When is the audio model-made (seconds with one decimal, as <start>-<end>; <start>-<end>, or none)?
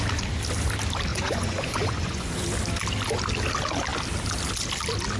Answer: 1.1-2.3